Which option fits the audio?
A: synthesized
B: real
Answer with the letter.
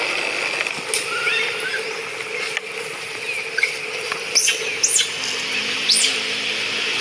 B